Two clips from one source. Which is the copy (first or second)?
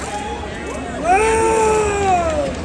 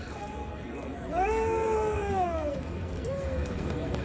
second